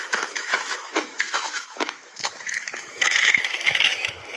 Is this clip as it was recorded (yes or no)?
no